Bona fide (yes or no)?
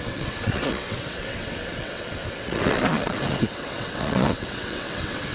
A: no